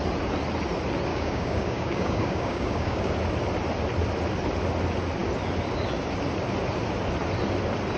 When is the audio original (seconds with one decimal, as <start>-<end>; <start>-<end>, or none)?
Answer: 0.0-1.1; 3.1-8.0